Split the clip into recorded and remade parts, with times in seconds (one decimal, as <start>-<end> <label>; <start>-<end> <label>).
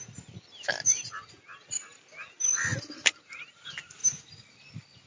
0.0-2.7 recorded; 2.7-3.4 remade; 3.4-4.0 recorded; 4.0-5.1 remade